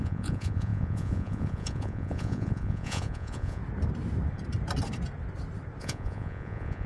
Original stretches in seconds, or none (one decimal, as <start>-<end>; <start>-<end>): 3.6-5.8